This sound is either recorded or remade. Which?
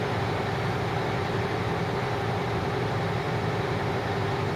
recorded